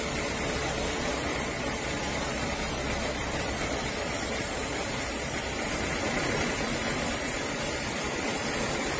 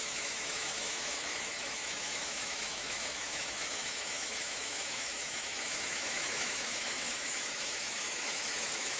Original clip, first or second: first